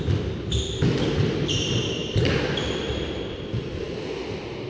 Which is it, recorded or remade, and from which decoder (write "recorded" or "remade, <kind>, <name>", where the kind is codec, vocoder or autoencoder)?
recorded